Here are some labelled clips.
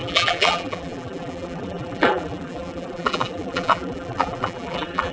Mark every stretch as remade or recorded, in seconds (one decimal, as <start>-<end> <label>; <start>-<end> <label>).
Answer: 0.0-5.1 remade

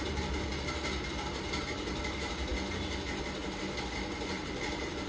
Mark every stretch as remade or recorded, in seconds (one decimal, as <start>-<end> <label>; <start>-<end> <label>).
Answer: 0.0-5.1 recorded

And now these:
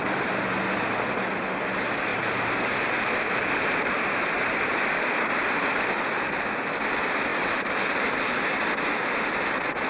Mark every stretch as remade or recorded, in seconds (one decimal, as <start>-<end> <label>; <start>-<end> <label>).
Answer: 0.0-2.1 recorded; 2.1-4.8 remade; 4.8-7.3 recorded; 7.3-8.0 remade; 8.0-9.9 recorded